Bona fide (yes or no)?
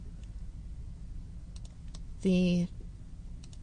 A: yes